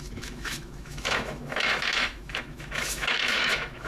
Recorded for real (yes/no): no